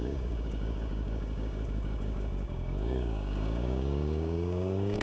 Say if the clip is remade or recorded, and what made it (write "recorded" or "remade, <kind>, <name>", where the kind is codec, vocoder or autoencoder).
remade, codec, DAC